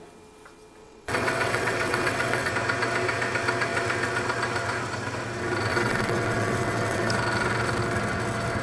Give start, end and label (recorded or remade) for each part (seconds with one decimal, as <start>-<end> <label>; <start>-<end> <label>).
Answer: 0.0-0.8 recorded; 0.8-2.5 remade; 2.5-5.7 recorded; 5.7-7.1 remade; 7.1-8.6 recorded